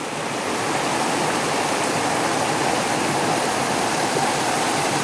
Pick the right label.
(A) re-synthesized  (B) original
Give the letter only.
B